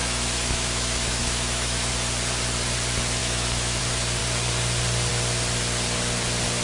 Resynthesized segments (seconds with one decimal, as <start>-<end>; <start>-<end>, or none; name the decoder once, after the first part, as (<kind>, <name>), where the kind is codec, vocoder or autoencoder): 0.0-1.9 (autoencoder, DAC-VAE); 3.2-3.8